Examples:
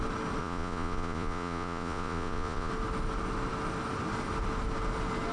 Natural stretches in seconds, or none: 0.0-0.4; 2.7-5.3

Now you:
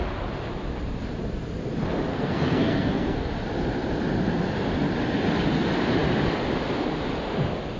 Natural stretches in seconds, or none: 0.0-2.1; 3.3-7.8